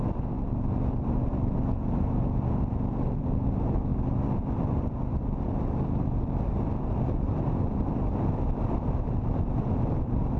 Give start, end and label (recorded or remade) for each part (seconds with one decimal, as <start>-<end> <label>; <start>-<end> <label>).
0.0-10.4 recorded